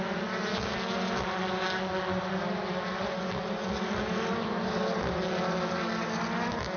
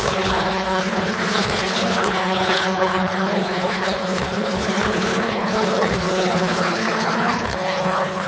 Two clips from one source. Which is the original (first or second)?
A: first